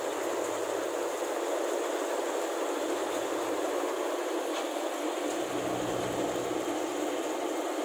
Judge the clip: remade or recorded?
recorded